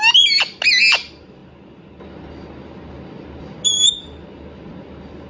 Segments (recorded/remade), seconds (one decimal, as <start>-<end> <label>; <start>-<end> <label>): 0.0-5.3 recorded